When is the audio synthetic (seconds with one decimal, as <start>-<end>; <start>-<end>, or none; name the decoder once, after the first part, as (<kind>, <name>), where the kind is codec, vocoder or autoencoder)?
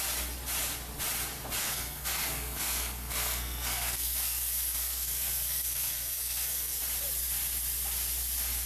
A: 1.6-6.8 (codec, SNAC)